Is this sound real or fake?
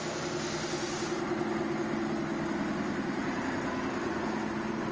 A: real